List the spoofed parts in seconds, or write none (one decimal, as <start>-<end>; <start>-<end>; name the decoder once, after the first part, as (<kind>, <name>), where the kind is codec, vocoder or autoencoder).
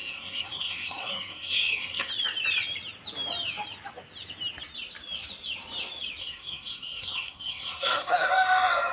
0.0-2.1 (codec, SNAC); 6.2-8.3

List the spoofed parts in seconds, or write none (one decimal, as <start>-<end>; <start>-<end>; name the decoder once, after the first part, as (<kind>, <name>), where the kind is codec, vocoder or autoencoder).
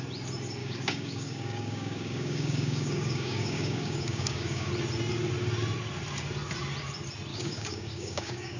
0.6-4.7 (codec, DAC); 7.3-8.6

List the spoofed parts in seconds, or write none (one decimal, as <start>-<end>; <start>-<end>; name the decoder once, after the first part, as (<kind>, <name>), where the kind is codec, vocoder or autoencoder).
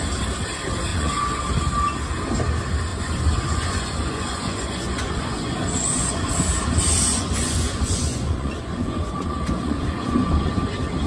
0.9-1.4 (vocoder, Vocos); 2.9-6.3; 7.1-10.5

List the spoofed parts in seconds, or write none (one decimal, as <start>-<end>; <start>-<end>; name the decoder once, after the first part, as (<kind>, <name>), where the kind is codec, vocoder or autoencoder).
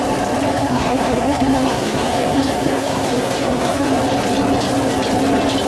0.5-3.9 (codec, SNAC)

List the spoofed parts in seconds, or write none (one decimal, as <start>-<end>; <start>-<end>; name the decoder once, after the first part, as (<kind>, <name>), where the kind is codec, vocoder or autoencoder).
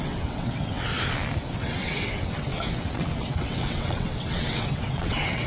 0.0-0.9 (vocoder, WaveNeXt); 1.6-5.5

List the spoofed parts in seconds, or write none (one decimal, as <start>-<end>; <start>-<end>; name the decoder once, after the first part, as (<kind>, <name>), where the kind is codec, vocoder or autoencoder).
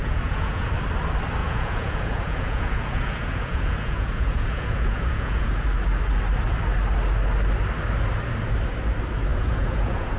0.0-0.7 (vocoder, Vocos); 1.4-5.5; 9.3-10.2